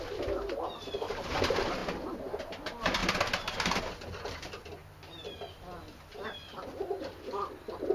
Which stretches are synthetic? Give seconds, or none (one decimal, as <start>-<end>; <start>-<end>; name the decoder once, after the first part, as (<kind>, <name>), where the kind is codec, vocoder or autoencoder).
none